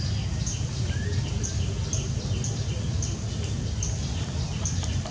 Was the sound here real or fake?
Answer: real